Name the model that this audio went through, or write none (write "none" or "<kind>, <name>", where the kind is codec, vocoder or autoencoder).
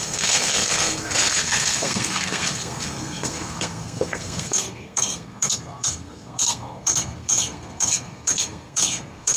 codec, SNAC